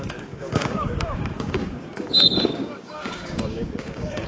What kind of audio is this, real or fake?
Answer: fake